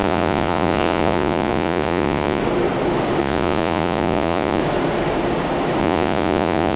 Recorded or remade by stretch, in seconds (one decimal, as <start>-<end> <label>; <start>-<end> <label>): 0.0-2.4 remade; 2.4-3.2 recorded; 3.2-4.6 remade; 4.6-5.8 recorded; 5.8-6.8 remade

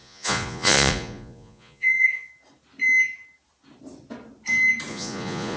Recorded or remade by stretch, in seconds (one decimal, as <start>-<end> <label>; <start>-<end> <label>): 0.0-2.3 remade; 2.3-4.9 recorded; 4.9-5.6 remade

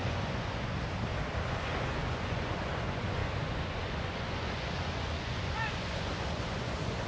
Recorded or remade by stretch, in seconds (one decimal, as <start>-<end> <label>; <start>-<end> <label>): 0.0-0.7 remade; 0.7-1.5 recorded; 1.5-7.1 remade

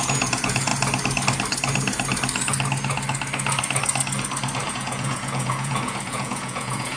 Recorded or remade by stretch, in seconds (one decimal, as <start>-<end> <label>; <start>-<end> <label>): 0.0-0.7 remade; 0.7-4.7 recorded; 4.7-7.0 remade

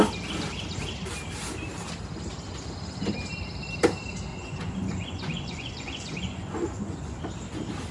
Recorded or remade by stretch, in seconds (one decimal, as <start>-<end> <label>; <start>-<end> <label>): 0.0-4.3 recorded; 4.3-7.2 remade; 7.2-7.9 recorded